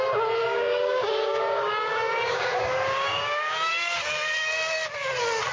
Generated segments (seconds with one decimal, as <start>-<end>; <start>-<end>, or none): 0.4-3.7